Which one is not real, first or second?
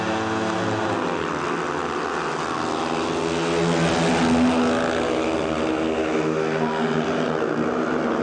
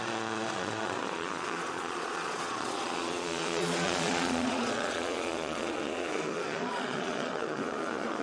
second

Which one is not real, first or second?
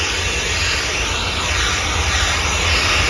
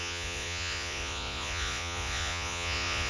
second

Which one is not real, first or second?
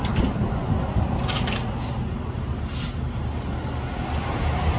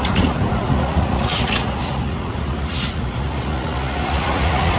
second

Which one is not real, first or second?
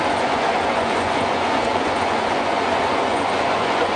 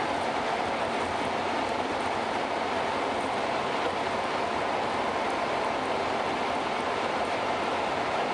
first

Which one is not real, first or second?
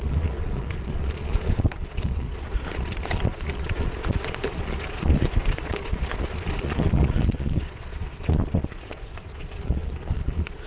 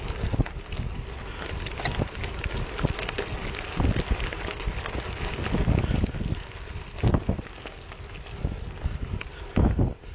first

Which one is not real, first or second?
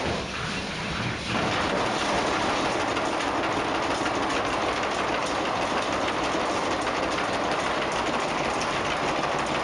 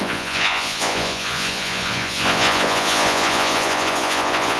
second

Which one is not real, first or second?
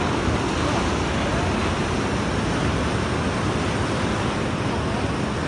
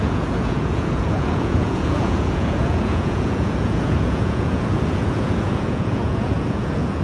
second